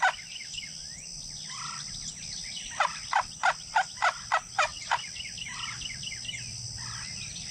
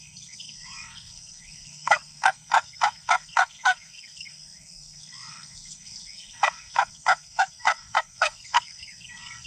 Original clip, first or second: first